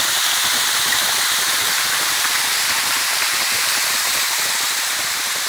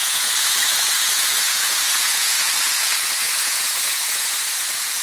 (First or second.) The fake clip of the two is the second